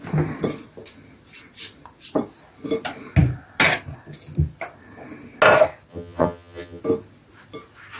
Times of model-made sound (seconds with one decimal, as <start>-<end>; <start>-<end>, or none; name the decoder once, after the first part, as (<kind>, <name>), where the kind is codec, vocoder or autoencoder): 5.9-6.8 (vocoder, HiFi-GAN)